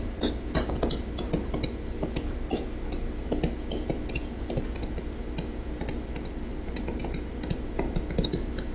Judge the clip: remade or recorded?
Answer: recorded